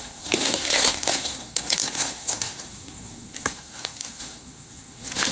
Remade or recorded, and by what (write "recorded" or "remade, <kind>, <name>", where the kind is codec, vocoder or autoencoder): remade, codec, SNAC